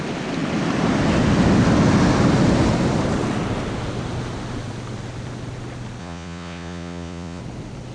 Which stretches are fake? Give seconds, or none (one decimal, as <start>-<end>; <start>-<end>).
6.0-7.4